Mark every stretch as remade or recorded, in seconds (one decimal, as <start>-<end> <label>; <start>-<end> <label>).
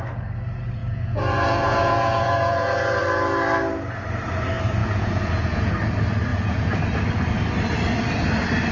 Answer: 0.0-0.8 recorded; 0.8-3.0 remade; 3.0-4.8 recorded; 4.8-5.7 remade; 5.7-6.3 recorded; 6.3-6.8 remade; 6.8-8.7 recorded